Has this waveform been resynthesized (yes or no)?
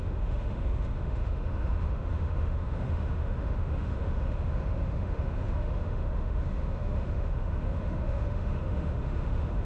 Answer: yes